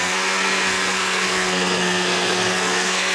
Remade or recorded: remade